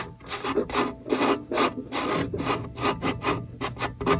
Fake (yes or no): no